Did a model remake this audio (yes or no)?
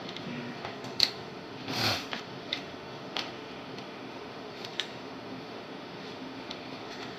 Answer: yes